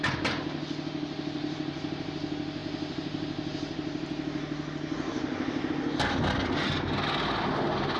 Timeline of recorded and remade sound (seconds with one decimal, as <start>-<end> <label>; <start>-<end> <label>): 0.0-1.4 recorded; 1.4-2.1 remade; 2.1-2.6 recorded; 2.6-5.7 remade; 5.7-8.0 recorded